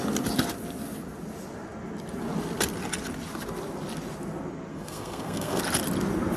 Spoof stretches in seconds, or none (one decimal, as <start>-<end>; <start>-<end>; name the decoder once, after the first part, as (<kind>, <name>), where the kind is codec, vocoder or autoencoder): 4.7-5.6 (codec, SNAC)

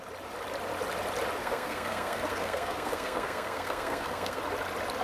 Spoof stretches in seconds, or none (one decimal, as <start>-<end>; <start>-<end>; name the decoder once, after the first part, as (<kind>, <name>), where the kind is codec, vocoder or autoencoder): 1.4-4.4 (codec, SNAC)